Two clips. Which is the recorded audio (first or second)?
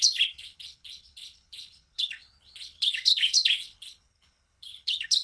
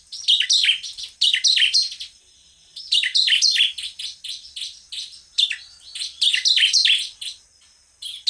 second